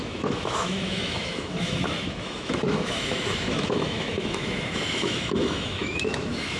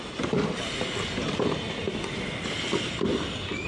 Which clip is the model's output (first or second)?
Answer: first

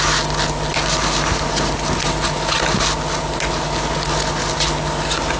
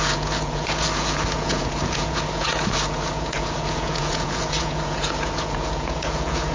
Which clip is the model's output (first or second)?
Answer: second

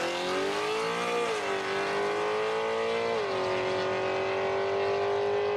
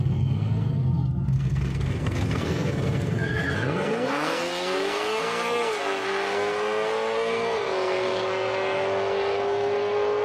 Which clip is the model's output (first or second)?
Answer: second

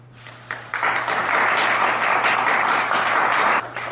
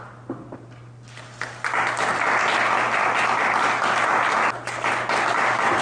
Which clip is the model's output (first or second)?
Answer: first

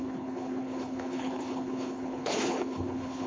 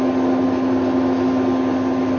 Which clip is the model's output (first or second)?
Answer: first